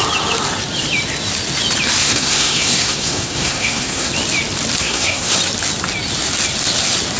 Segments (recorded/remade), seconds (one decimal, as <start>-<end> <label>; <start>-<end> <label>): 0.0-2.0 recorded; 2.0-4.1 remade; 4.1-4.8 recorded; 4.8-5.4 remade; 5.4-7.2 recorded